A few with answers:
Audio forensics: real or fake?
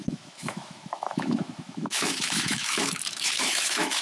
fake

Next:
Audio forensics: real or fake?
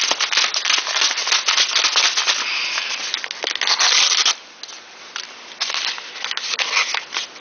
real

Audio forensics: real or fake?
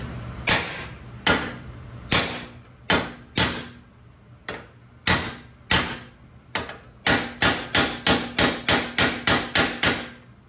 real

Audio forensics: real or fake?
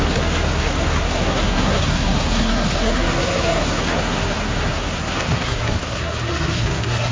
fake